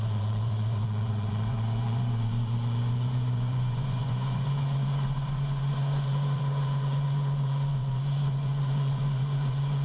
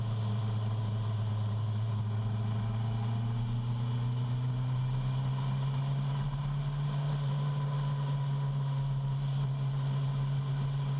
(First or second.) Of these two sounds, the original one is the second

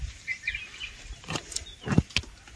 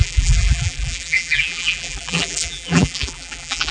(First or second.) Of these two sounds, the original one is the first